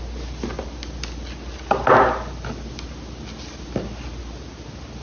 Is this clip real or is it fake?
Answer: real